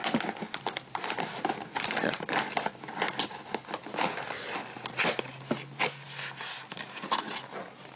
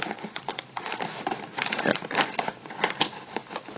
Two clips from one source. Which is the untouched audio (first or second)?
first